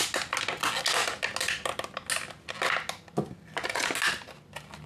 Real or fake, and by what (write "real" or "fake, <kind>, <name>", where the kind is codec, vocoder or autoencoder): real